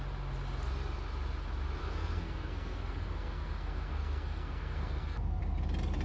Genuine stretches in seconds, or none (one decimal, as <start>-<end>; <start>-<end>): 0.0-1.8; 5.4-6.0